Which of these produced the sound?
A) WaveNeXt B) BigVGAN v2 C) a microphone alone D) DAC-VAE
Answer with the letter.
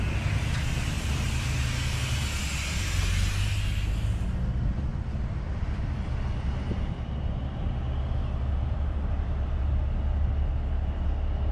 C